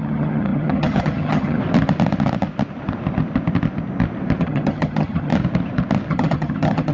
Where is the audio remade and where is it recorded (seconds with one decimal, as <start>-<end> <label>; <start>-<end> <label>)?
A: 0.0-1.6 remade; 1.6-4.4 recorded; 4.4-5.3 remade; 5.3-6.1 recorded; 6.1-6.9 remade